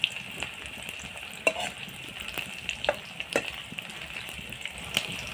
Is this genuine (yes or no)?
yes